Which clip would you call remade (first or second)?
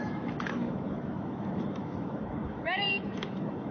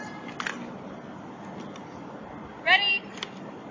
first